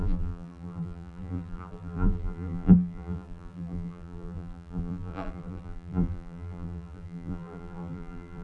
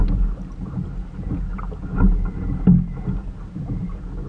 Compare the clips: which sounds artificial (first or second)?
first